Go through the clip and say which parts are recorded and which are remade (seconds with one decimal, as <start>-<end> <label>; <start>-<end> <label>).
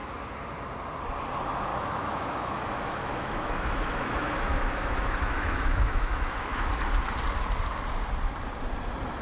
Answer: 0.0-1.7 recorded; 1.7-6.7 remade; 6.7-9.2 recorded